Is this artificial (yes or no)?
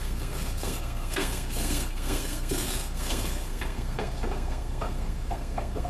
yes